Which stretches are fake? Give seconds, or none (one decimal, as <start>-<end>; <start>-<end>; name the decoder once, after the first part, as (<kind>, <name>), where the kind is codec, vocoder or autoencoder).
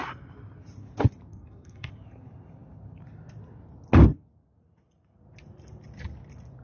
1.3-1.9 (codec, SNAC)